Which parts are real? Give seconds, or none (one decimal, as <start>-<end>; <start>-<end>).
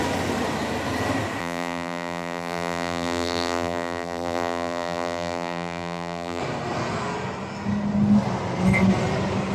0.0-1.4; 6.4-9.5